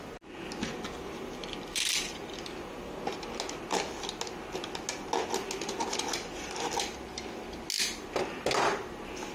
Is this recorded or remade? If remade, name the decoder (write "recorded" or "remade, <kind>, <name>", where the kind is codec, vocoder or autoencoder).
recorded